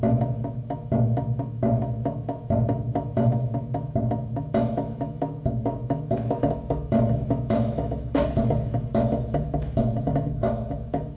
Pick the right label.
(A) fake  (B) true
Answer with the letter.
A